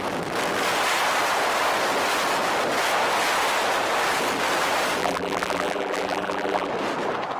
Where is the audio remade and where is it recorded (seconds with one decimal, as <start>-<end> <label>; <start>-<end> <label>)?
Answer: 0.0-5.0 recorded; 5.0-6.7 remade; 6.7-7.4 recorded